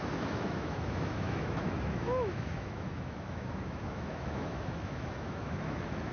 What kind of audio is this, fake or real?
fake